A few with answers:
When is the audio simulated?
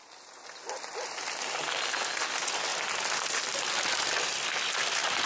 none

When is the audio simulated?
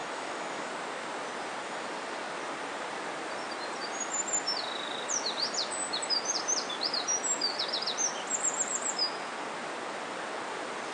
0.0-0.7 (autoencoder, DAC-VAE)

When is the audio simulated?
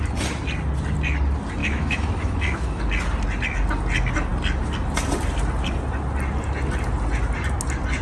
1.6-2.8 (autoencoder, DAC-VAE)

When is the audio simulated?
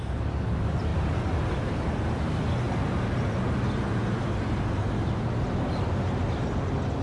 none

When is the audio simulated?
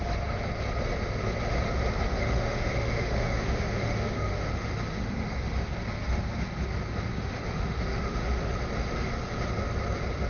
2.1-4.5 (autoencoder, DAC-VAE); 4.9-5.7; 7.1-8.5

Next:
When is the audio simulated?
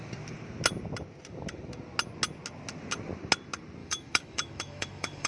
3.8-5.3 (autoencoder, DAC-VAE)